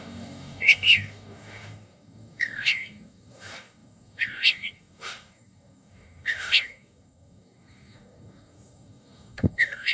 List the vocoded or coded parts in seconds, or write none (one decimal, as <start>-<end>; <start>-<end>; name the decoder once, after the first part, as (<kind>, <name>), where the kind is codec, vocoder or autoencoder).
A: 0.0-9.9 (codec, DAC)